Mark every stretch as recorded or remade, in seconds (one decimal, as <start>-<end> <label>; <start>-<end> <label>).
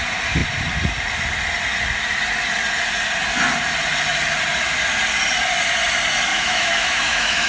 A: 0.0-6.3 recorded; 6.3-7.5 remade